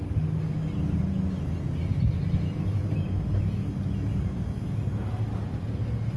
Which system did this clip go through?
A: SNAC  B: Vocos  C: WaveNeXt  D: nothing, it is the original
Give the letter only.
D